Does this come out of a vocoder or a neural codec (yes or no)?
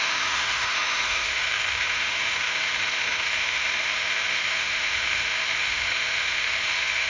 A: yes